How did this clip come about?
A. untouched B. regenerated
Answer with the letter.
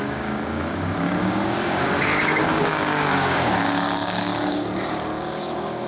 B